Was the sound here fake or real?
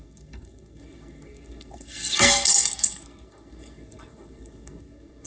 fake